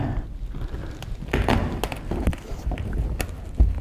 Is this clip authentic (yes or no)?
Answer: yes